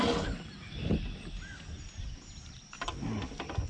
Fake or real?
real